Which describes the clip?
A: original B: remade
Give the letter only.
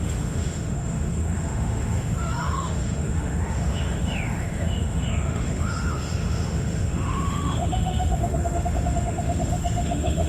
B